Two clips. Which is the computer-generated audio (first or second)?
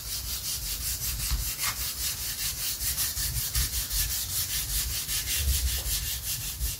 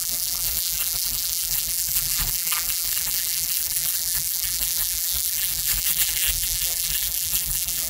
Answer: second